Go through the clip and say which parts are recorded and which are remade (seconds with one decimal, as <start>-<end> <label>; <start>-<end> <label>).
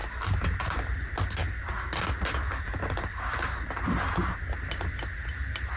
0.0-5.8 recorded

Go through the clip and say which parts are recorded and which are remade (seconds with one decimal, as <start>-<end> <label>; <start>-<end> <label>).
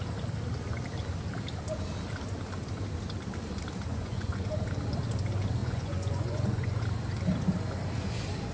0.0-3.9 recorded; 3.9-4.6 remade; 4.6-5.6 recorded; 5.6-6.8 remade; 6.8-8.5 recorded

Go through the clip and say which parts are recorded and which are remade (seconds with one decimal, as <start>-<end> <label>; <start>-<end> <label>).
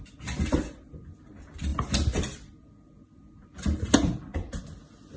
0.0-5.2 recorded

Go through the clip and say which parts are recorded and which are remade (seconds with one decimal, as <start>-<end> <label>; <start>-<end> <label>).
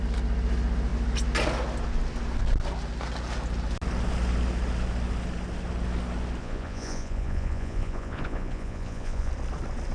0.0-6.4 recorded; 6.4-9.3 remade; 9.3-9.9 recorded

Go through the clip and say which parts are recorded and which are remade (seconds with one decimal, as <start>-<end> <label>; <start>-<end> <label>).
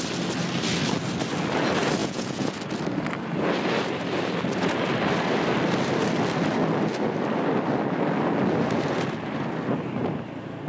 0.0-2.0 recorded; 2.0-2.5 remade; 2.5-10.7 recorded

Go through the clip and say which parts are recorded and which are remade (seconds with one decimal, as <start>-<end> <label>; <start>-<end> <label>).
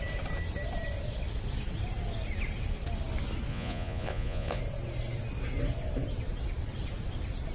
0.0-3.5 recorded; 3.5-4.6 remade; 4.6-7.5 recorded